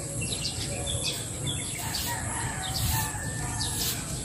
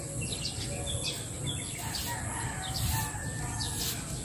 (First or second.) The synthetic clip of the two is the first